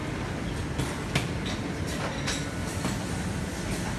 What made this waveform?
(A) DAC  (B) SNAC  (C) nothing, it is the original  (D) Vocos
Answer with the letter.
C